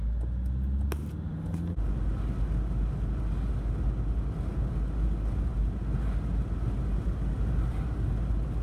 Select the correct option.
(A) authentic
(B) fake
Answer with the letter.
A